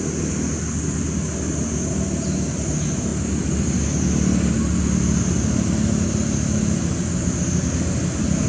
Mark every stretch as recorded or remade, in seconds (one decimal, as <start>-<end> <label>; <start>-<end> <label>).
0.0-8.5 recorded